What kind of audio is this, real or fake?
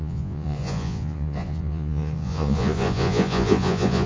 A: fake